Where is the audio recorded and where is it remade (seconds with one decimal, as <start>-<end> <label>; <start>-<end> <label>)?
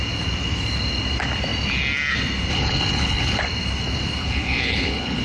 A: 0.0-2.5 recorded; 2.5-3.4 remade; 3.4-4.2 recorded; 4.2-5.2 remade